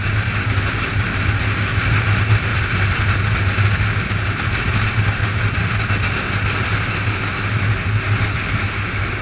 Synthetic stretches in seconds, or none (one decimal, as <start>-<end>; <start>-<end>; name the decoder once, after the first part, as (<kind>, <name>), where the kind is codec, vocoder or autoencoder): none